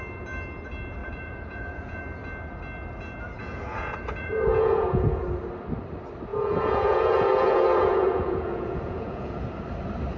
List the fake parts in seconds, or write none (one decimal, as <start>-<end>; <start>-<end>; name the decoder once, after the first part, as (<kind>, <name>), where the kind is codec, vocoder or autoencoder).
1.0-2.0 (vocoder, Vocos); 3.4-5.2; 6.3-9.3